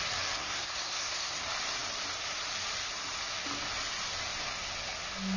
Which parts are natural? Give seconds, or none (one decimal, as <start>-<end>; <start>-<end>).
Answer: 0.0-0.4; 1.4-5.4